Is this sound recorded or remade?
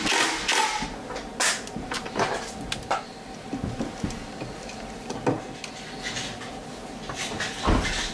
recorded